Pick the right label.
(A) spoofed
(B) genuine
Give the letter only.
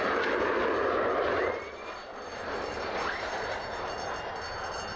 B